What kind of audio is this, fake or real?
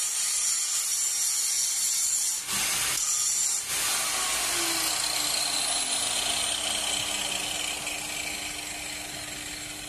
real